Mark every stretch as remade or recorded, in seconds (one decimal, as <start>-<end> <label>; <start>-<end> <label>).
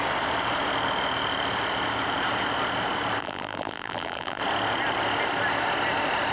0.0-3.2 recorded; 3.2-4.4 remade; 4.4-6.3 recorded